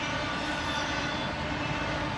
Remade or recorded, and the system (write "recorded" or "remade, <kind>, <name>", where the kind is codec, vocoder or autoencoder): recorded